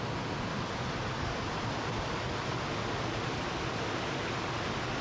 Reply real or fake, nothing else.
real